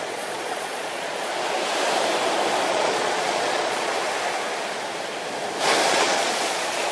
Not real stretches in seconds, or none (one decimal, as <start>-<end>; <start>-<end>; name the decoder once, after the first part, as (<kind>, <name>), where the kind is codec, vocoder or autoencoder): 0.0-1.3 (vocoder, Vocos); 2.7-3.9; 5.9-6.9